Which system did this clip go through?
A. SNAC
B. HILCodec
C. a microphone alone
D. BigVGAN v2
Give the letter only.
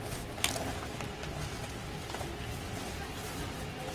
C